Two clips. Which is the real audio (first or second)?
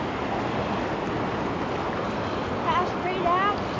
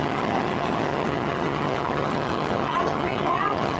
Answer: first